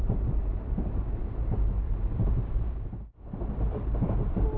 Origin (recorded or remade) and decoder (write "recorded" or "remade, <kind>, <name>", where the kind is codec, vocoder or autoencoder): recorded